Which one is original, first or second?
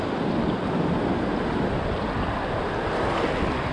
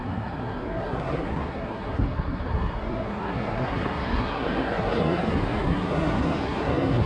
first